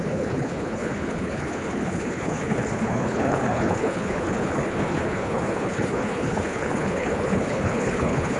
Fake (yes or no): yes